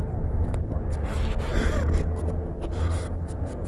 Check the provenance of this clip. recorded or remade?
recorded